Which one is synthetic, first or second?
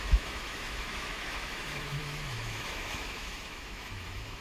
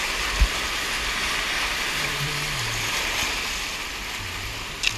first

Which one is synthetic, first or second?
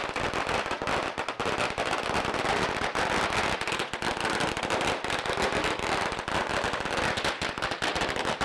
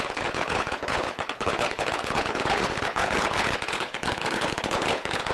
second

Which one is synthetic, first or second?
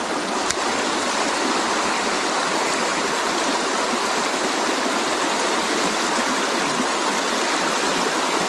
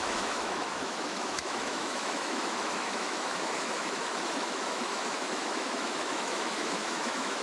second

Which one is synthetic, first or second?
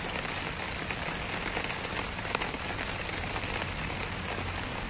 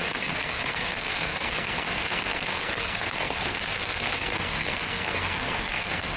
second